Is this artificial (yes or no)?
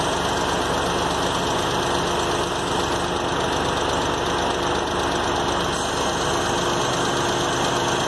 no